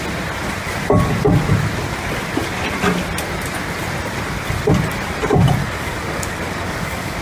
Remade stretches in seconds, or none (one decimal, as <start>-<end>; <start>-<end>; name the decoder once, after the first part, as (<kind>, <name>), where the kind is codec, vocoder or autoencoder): 5.6-7.2 (codec, DAC)